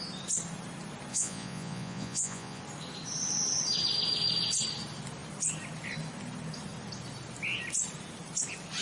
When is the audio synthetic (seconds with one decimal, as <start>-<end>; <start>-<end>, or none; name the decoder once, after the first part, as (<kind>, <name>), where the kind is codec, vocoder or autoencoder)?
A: 1.1-2.6 (vocoder, Vocos)

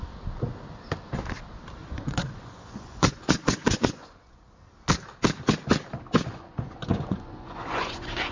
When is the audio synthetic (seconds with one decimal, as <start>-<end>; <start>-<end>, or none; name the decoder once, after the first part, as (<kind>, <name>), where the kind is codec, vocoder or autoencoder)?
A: 1.8-4.4 (vocoder, Vocos); 6.3-8.3

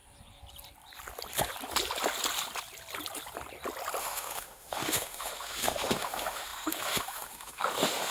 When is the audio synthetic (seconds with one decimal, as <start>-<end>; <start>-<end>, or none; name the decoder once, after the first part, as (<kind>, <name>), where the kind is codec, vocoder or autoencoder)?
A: 4.0-8.1 (autoencoder, DAC-VAE)

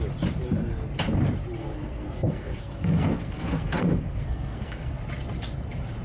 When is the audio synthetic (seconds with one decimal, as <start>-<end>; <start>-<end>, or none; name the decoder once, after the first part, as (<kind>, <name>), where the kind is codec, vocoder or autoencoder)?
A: 1.6-5.0 (codec, SNAC)